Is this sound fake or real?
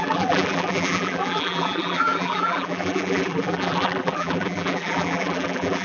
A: fake